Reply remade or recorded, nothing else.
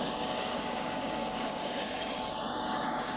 remade